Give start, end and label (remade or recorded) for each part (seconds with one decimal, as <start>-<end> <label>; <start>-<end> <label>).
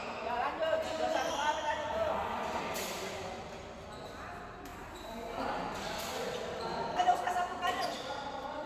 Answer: 0.0-8.7 recorded